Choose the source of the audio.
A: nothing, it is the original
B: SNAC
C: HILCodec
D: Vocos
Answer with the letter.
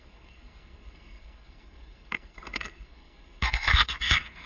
B